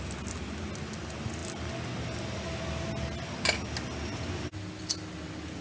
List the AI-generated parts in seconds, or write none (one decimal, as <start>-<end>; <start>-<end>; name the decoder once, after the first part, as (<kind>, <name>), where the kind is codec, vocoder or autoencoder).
none